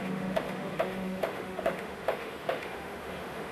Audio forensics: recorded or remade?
remade